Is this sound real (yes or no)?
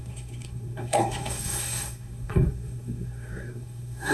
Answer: no